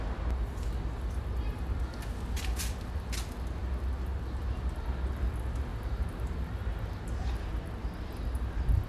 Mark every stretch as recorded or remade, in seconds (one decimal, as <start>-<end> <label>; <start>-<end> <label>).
0.0-5.7 recorded; 5.7-7.6 remade; 7.6-8.9 recorded